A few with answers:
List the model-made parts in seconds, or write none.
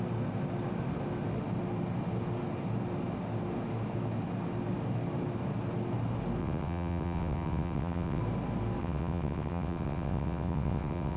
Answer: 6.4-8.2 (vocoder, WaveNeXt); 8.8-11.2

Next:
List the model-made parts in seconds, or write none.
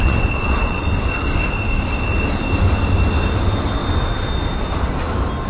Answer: 0.0-0.8 (vocoder, WaveNeXt)